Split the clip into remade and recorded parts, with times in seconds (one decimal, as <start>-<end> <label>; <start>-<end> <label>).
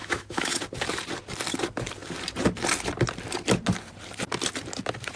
0.0-0.6 remade; 0.6-5.2 recorded